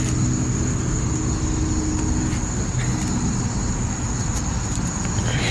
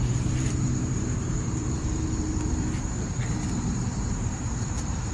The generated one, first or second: second